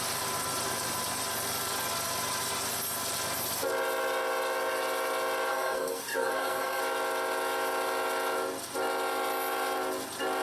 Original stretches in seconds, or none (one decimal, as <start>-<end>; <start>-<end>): 0.0-5.5; 6.8-10.4